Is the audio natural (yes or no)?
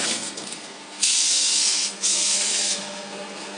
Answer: no